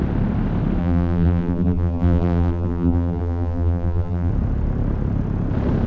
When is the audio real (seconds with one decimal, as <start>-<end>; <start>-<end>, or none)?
0.0-0.8; 4.3-5.9